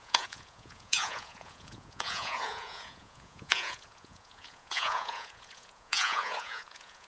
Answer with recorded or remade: remade